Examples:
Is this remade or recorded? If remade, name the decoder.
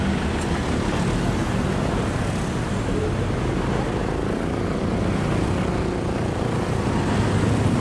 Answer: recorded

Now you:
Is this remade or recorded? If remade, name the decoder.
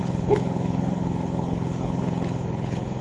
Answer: remade, codec, HILCodec